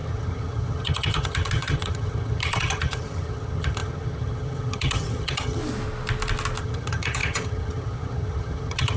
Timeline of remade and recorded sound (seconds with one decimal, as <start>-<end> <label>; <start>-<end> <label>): 0.0-5.6 remade; 5.6-6.6 recorded; 6.6-9.0 remade